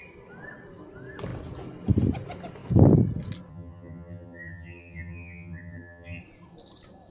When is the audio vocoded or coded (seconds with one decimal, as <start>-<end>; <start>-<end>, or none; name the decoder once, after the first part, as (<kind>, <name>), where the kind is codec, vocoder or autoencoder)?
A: 3.5-6.2 (vocoder, HiFi-GAN)